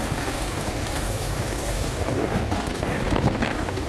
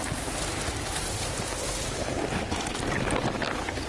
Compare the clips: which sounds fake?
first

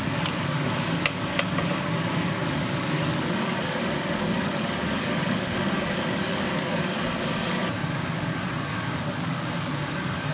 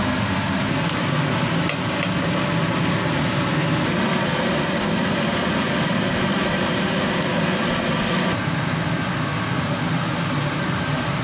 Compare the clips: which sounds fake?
first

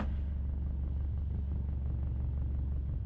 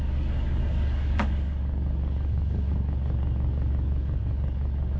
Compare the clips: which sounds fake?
second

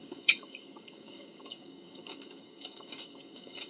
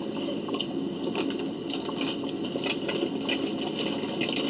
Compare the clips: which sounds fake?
first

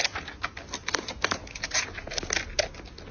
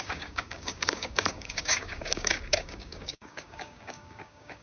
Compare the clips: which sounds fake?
second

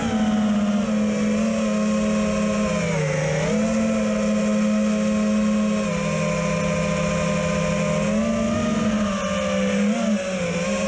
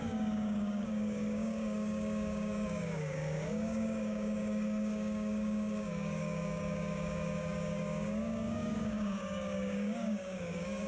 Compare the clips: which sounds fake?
second